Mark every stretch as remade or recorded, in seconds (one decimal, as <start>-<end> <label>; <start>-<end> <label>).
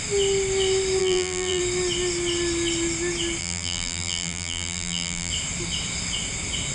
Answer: 0.0-1.0 recorded; 1.0-1.6 remade; 1.6-3.4 recorded; 3.4-5.3 remade; 5.3-6.7 recorded